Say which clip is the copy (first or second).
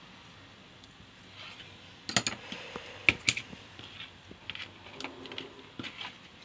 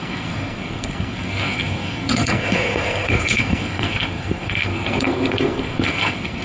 second